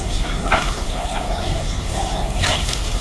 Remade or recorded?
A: remade